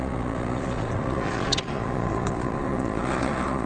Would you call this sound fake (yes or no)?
yes